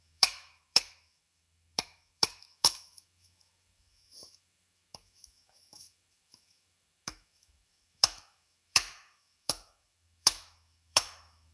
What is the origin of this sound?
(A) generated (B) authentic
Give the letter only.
A